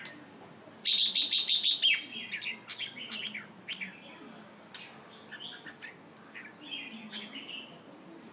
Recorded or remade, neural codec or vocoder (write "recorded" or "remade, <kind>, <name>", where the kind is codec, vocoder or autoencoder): recorded